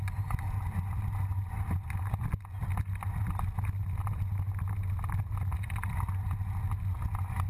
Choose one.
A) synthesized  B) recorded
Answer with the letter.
B